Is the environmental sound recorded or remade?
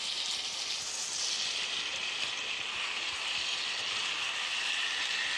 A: recorded